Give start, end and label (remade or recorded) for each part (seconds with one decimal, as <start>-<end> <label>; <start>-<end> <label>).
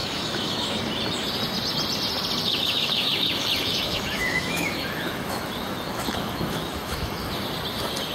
0.0-0.8 remade; 0.8-2.4 recorded; 2.4-7.3 remade; 7.3-8.1 recorded